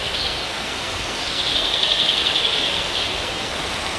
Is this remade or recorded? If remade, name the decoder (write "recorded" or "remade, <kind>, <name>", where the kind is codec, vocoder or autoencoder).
remade, codec, SNAC